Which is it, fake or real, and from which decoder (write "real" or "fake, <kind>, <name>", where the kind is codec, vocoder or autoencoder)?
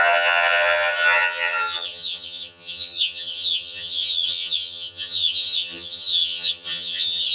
fake, vocoder, HiFi-GAN